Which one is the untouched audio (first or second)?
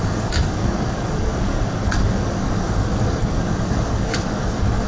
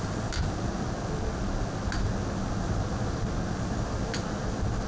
second